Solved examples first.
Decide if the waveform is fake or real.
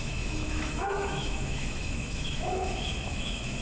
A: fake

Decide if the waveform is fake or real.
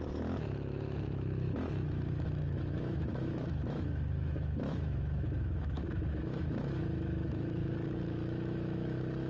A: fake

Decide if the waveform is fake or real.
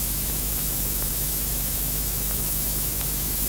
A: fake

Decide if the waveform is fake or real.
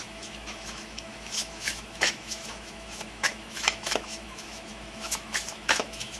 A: fake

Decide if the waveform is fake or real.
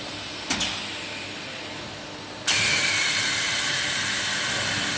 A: real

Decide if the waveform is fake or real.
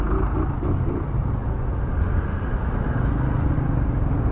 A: real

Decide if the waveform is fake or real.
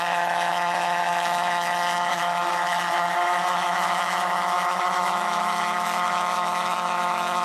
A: fake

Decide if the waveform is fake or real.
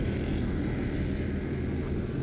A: real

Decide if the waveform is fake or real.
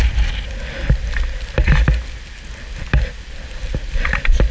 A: real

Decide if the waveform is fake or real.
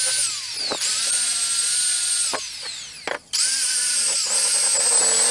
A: real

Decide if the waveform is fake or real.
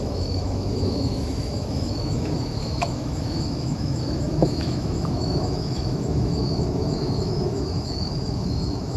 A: fake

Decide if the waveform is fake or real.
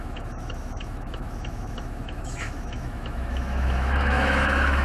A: fake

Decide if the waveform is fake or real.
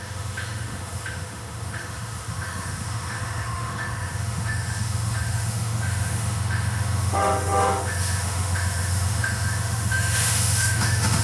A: fake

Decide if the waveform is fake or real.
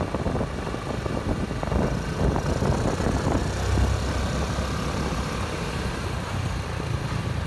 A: real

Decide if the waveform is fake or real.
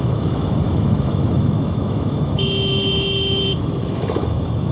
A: fake